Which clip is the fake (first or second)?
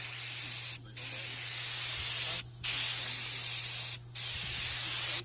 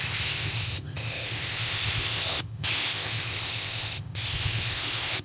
second